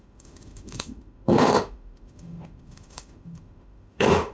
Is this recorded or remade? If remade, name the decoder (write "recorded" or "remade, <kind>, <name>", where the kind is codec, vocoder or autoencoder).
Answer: remade, autoencoder, DAC-VAE